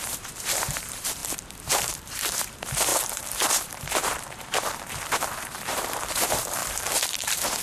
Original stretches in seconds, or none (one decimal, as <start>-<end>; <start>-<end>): none